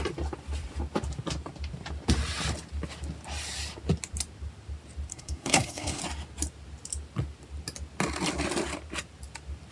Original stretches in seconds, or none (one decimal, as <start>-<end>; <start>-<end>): 0.0-5.1; 6.0-9.7